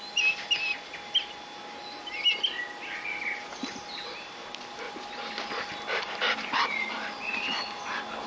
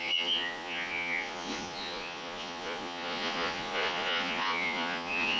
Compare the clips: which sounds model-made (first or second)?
second